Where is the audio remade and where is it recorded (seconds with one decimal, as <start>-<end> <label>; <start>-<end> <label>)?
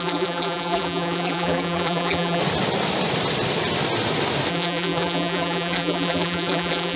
0.0-2.4 remade; 2.4-4.5 recorded; 4.5-7.0 remade